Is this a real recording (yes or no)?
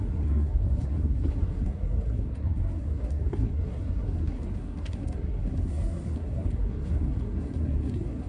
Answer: no